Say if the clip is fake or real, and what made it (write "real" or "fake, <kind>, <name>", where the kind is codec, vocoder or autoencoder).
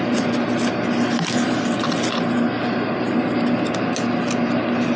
real